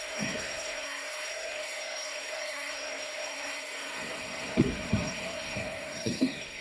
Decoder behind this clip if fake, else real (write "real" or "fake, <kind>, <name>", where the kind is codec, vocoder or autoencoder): fake, codec, SNAC